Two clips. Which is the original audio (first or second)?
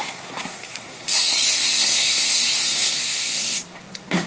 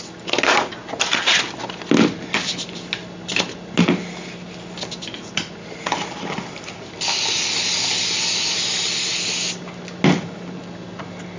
second